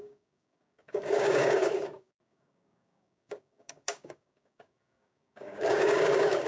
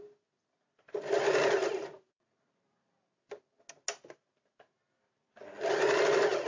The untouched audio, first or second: second